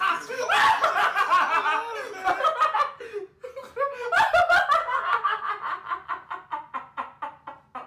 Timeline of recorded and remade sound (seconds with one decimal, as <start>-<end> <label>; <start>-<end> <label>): 0.0-4.8 recorded; 4.8-5.5 remade; 5.5-7.9 recorded